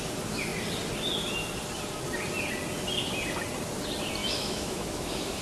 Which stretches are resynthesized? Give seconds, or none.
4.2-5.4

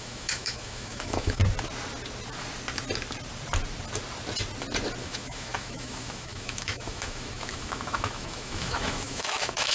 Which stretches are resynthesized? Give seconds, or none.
0.0-1.4; 5.0-9.7

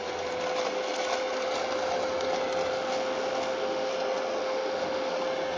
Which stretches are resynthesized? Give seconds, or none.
2.7-3.9; 4.4-5.1

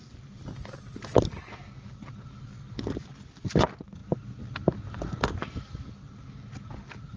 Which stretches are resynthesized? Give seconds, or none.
none

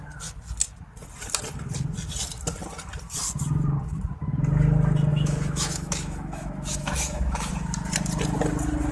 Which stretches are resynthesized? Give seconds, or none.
5.1-7.5

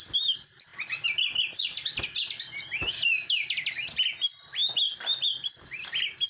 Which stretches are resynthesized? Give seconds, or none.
none